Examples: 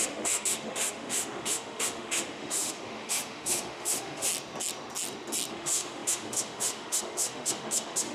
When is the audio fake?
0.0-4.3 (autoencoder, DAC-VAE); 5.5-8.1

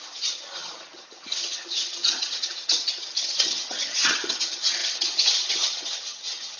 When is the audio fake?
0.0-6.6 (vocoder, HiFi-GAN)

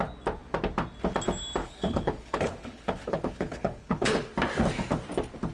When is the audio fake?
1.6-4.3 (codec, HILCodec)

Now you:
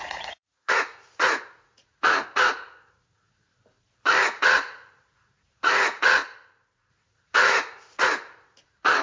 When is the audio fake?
0.0-3.5 (vocoder, Vocos); 4.2-6.2; 6.9-9.0